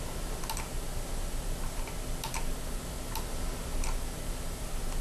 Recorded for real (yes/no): yes